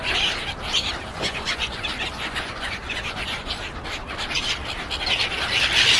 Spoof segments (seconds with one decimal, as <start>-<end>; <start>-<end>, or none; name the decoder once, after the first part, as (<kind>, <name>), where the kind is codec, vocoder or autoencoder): 1.1-3.5 (vocoder, Vocos)